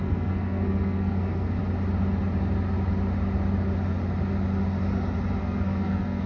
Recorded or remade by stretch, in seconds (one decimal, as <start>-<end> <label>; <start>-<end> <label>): 0.0-1.6 remade; 1.6-5.4 recorded; 5.4-6.3 remade